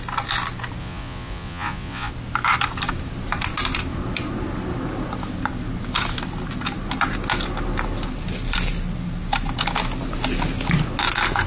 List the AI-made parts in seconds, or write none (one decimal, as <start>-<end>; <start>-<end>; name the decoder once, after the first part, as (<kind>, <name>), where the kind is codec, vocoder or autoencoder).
0.8-2.1 (vocoder, Vocos)